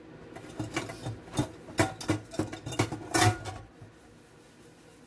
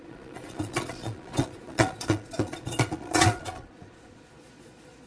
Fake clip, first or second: second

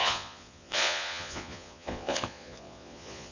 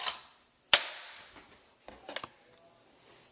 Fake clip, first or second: first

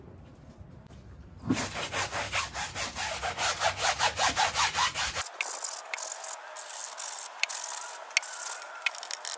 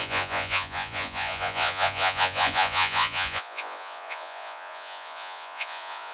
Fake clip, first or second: second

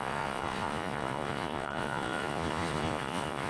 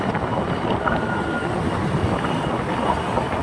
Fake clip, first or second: first